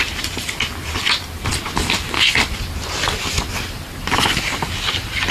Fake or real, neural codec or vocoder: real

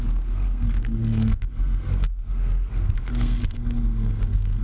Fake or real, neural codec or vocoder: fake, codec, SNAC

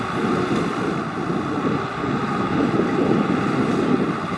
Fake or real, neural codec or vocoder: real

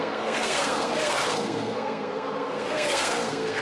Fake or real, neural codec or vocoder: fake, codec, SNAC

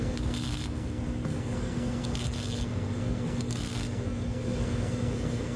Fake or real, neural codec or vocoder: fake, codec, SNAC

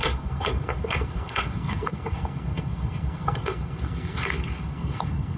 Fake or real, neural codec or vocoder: fake, codec, SNAC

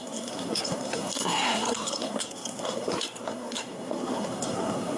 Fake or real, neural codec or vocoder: fake, codec, SNAC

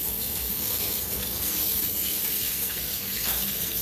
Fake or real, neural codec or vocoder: fake, codec, SNAC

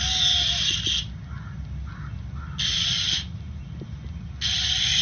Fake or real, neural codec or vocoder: real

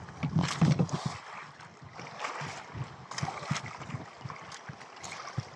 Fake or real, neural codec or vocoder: real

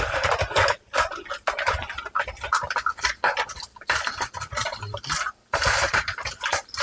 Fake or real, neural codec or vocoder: real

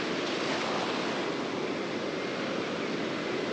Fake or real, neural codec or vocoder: real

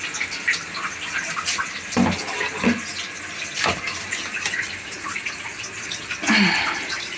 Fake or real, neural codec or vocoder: real